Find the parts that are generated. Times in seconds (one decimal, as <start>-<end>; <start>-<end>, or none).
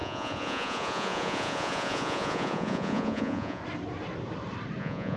0.0-3.6; 4.8-5.2